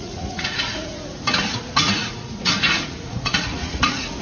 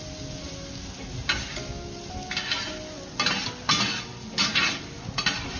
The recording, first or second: second